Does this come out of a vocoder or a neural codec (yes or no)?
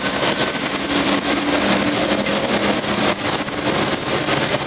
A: no